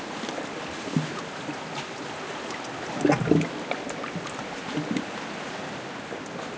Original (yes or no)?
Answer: yes